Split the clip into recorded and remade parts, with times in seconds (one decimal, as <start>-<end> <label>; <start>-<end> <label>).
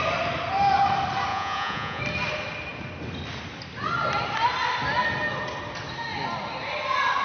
0.0-1.3 recorded; 1.3-2.0 remade; 2.0-7.2 recorded